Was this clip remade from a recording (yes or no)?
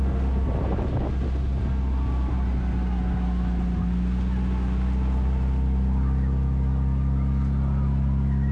no